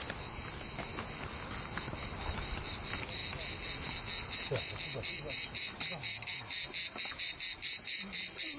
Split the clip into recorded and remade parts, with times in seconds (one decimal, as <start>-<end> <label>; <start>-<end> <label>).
0.0-0.9 remade; 0.9-1.8 recorded; 1.8-3.2 remade; 3.2-7.2 recorded; 7.2-8.6 remade